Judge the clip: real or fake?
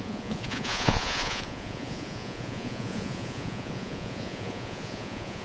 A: fake